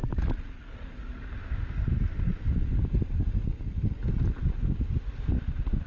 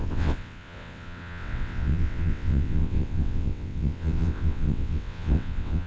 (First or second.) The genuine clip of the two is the first